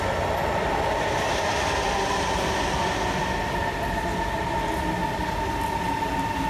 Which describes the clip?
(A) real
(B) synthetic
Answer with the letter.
A